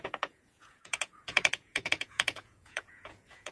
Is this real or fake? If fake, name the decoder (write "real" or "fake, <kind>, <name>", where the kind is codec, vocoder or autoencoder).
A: fake, vocoder, Vocos